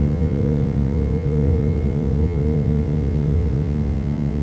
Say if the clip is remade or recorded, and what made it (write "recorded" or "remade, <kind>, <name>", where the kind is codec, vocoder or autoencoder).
remade, vocoder, WaveNeXt